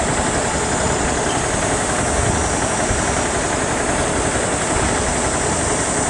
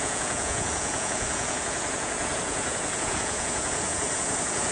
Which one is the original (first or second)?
first